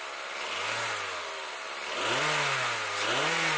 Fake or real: real